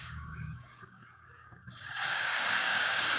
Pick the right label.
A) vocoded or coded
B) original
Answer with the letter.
A